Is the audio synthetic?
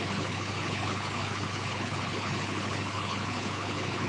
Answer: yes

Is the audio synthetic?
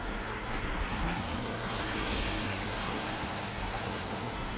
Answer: yes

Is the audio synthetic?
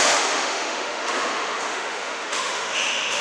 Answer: yes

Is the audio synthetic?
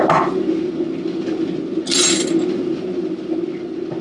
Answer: no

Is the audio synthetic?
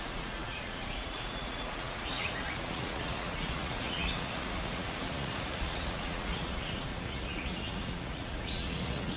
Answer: yes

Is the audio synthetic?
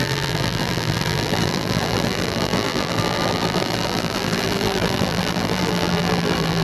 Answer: yes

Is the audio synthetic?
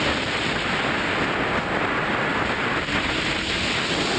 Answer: no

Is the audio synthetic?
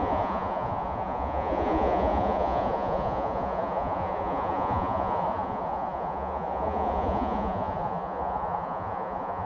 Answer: yes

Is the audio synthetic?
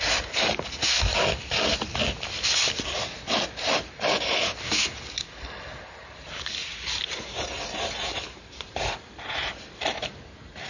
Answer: no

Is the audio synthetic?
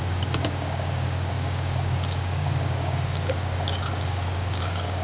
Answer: yes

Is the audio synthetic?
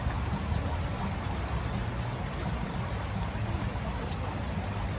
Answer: no